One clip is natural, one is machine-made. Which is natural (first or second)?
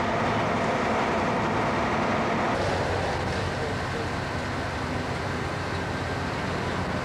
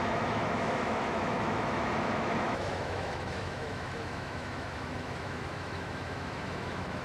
first